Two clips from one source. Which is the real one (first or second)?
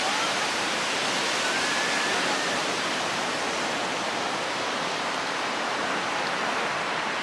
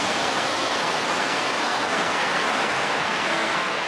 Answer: first